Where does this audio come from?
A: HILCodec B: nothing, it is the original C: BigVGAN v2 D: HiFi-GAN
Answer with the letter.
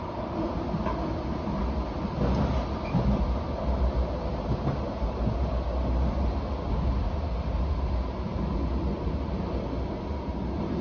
B